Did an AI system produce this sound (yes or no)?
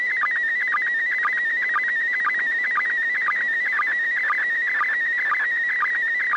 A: no